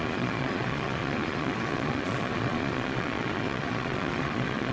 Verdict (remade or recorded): remade